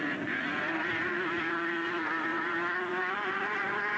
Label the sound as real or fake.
fake